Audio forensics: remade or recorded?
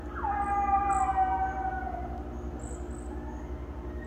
recorded